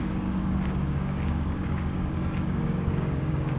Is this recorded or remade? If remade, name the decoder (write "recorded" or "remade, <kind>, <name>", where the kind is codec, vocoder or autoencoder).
remade, codec, DAC